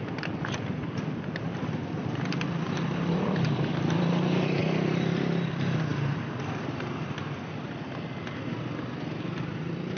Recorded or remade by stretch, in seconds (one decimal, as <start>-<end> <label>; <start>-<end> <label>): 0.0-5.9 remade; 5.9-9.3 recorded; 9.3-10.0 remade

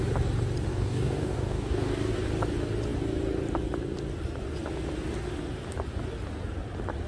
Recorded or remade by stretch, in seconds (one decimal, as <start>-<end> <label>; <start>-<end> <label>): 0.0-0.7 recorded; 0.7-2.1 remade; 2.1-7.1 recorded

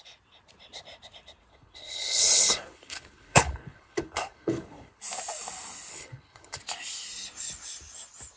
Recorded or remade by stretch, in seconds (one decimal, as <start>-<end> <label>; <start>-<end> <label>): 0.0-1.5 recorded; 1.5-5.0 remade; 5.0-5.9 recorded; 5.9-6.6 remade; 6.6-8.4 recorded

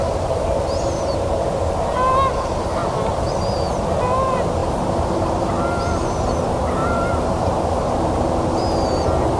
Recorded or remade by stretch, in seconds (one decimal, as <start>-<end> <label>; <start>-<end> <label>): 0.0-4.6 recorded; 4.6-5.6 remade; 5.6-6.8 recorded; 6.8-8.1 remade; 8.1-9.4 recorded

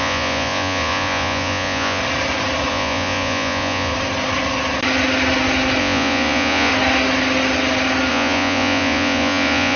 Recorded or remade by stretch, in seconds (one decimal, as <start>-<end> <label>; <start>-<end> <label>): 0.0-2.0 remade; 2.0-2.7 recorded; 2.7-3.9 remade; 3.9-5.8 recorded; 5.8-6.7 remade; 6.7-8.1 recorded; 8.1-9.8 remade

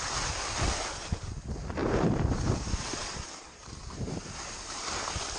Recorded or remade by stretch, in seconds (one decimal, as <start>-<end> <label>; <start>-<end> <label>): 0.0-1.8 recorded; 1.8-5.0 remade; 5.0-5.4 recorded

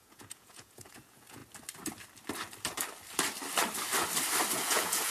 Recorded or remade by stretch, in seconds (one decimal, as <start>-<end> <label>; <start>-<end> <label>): 0.0-1.4 remade; 1.4-4.5 recorded; 4.5-5.1 remade